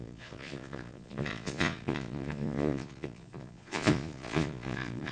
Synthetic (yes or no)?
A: yes